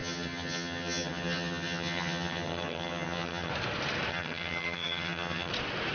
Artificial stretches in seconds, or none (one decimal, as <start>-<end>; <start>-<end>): 0.0-3.5; 4.1-5.5